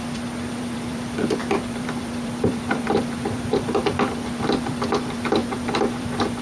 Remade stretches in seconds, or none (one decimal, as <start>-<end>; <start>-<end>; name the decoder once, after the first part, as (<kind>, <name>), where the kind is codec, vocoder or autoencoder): 0.0-3.8 (vocoder, BigVGAN v2); 4.4-6.4